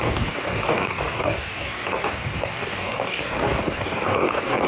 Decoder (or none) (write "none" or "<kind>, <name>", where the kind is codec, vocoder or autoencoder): codec, DAC